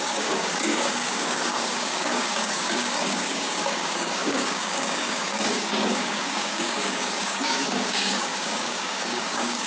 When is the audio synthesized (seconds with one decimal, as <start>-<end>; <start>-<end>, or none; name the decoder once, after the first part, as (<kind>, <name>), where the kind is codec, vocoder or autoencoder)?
0.0-9.7 (codec, DAC)